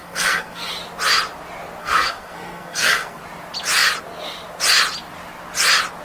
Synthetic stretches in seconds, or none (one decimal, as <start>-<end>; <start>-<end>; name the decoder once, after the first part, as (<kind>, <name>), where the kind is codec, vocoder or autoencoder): 0.0-0.7 (codec, SNAC); 1.8-3.2